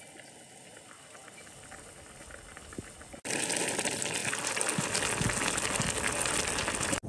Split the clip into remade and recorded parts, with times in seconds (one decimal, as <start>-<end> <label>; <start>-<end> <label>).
0.0-7.1 recorded

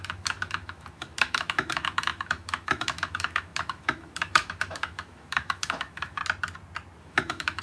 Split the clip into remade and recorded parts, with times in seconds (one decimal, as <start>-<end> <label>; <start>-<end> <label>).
0.0-6.2 remade; 6.2-7.0 recorded; 7.0-7.6 remade

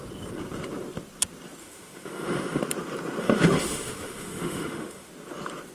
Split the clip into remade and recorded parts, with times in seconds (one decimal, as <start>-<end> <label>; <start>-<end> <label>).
0.0-1.6 recorded; 1.6-2.6 remade; 2.6-3.2 recorded; 3.2-5.1 remade; 5.1-5.7 recorded

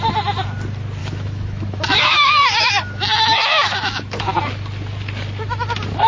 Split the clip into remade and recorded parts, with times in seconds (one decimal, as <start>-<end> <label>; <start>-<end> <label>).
0.0-1.0 recorded; 1.0-4.3 remade; 4.3-6.1 recorded

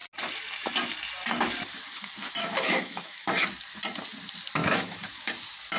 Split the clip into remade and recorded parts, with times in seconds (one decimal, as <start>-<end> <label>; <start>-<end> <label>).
0.0-2.4 recorded; 2.4-3.3 remade; 3.3-4.6 recorded; 4.6-5.3 remade; 5.3-5.8 recorded

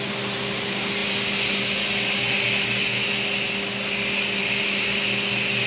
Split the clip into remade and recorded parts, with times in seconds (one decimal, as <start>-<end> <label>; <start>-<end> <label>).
0.0-5.7 recorded

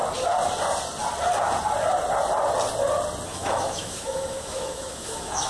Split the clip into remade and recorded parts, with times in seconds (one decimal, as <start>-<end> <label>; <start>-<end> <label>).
0.0-3.3 recorded; 3.3-5.5 remade

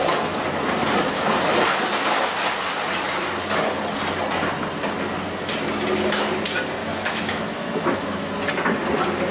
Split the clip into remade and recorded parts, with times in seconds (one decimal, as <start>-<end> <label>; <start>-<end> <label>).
0.0-6.8 recorded; 6.8-8.3 remade; 8.3-9.3 recorded